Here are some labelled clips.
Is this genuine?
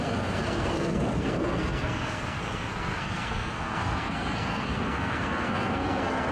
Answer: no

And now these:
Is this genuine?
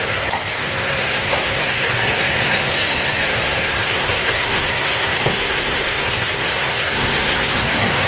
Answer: no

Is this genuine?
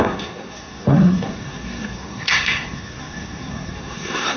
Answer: no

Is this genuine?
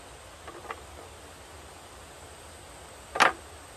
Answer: yes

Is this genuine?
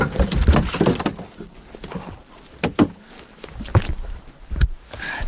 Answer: yes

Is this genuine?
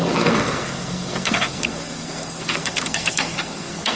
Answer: no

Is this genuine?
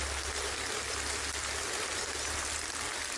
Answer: yes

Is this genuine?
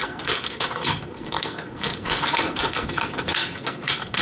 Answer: no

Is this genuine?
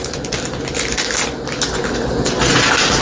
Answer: yes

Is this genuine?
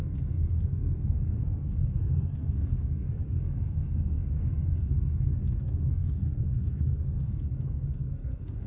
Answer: no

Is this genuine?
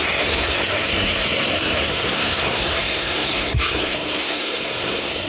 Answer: no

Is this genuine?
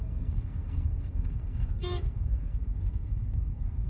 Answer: no